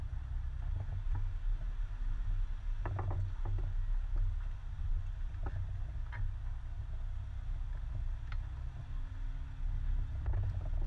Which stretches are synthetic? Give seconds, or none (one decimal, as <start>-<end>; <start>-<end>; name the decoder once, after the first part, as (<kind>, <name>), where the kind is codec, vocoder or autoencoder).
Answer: none